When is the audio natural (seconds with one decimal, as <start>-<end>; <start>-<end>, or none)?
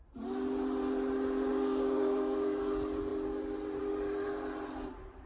0.0-1.5; 2.6-5.3